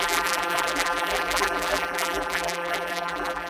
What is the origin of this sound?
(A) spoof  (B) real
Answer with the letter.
A